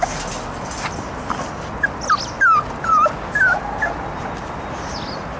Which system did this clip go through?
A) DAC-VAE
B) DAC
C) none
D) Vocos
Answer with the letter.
C